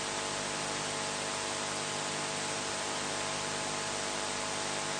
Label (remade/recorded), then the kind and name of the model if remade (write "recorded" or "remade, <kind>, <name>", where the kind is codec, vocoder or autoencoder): recorded